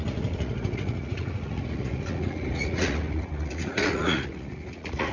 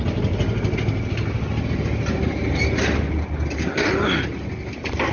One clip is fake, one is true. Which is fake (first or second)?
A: first